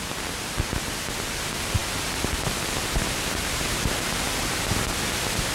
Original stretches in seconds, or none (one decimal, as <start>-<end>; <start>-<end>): 0.0-5.5